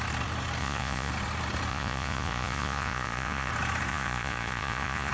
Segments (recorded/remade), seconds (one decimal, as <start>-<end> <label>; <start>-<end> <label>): 0.0-0.6 recorded; 0.6-1.1 remade; 1.1-1.7 recorded; 1.7-3.5 remade; 3.5-3.9 recorded; 3.9-5.1 remade